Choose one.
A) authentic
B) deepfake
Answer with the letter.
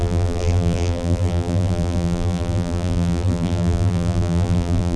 B